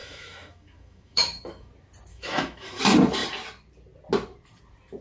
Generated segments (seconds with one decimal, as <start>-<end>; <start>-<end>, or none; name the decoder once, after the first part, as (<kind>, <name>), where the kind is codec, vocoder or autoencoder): 0.0-1.7 (autoencoder, DAC-VAE); 2.1-2.8